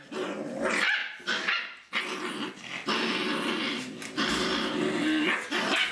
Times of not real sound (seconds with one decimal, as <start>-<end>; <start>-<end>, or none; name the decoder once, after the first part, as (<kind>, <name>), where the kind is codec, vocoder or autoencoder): none